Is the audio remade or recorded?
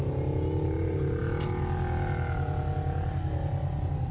recorded